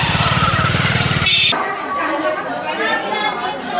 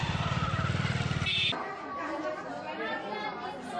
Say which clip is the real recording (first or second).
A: second